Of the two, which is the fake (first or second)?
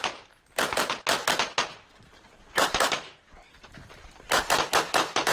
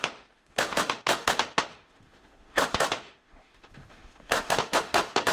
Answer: second